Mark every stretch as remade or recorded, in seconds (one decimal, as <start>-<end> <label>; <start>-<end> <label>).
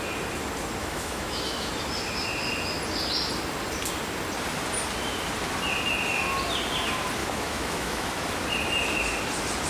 0.0-0.8 recorded; 0.8-1.7 remade; 1.7-7.2 recorded; 7.2-8.1 remade; 8.1-9.7 recorded